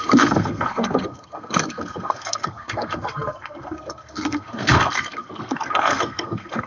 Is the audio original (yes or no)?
no